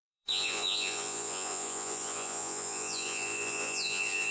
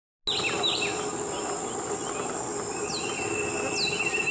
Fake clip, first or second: first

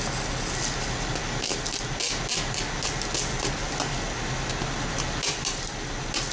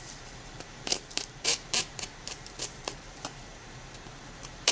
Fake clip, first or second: second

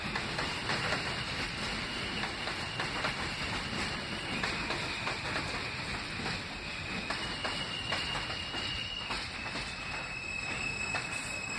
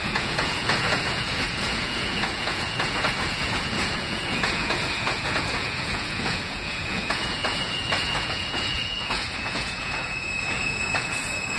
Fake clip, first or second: second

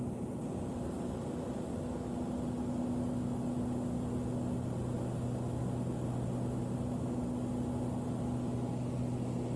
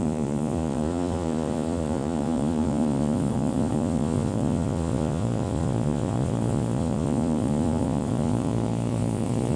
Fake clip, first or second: second